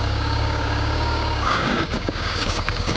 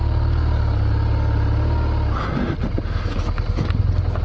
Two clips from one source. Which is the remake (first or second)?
first